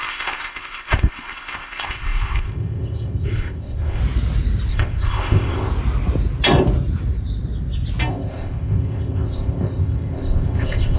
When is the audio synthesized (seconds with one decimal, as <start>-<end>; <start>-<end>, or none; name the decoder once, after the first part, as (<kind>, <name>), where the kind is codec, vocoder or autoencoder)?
0.0-4.0 (codec, ZipCodec); 4.7-5.7; 8.1-11.0